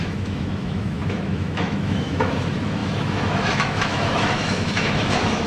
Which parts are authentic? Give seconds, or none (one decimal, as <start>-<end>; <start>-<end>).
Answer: none